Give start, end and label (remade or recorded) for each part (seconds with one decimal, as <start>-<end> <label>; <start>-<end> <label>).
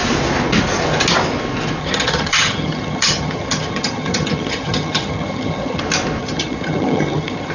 0.0-1.8 recorded; 1.8-5.8 remade; 5.8-6.2 recorded; 6.2-7.5 remade